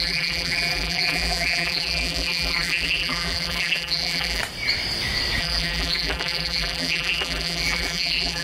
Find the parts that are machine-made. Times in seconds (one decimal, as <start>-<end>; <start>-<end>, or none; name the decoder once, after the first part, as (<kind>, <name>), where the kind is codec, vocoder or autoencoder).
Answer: 0.0-4.4 (vocoder, BigVGAN v2); 5.4-8.4